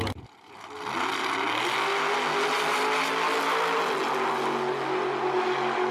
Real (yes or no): yes